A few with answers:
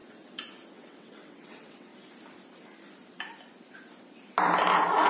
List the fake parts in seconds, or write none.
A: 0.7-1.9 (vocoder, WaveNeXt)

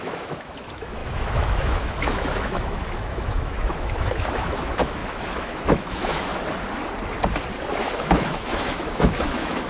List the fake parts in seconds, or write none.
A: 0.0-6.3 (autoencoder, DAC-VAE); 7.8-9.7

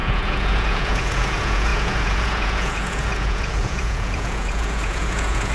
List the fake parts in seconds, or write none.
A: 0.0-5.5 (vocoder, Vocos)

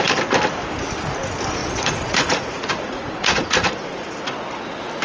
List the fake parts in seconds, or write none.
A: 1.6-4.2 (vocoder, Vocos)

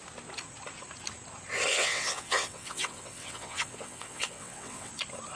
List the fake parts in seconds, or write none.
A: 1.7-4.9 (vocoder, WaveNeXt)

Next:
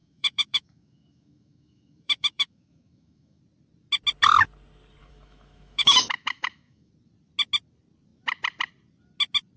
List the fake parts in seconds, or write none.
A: 0.0-3.4 (autoencoder, DAC-VAE); 5.0-6.9